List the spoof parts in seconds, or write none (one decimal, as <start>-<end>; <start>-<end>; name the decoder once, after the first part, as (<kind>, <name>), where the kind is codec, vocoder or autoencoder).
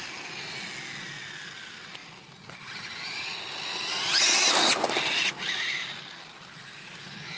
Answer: none